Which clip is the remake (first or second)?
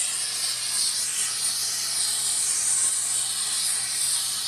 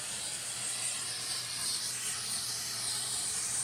second